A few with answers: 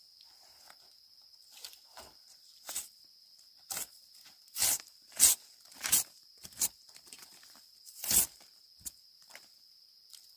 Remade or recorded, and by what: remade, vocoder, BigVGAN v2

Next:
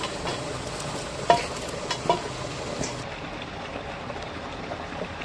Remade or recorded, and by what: recorded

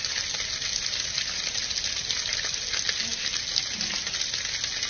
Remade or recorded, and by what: recorded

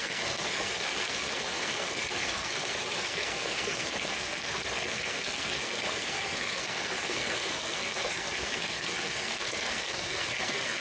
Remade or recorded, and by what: remade, codec, SNAC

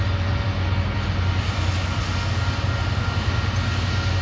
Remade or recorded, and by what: recorded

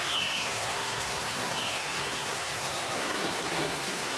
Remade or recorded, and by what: remade, codec, SNAC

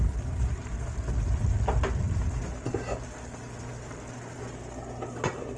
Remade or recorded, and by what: recorded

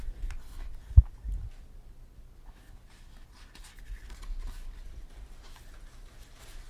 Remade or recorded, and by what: recorded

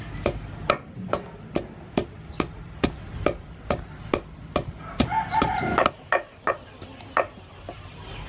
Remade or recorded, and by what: recorded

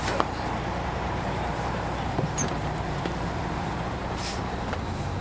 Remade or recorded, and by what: remade, vocoder, BigVGAN v2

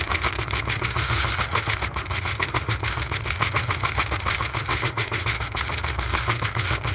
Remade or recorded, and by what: remade, autoencoder, DAC-VAE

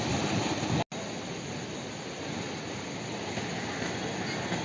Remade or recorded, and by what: recorded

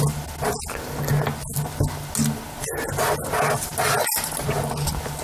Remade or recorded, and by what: recorded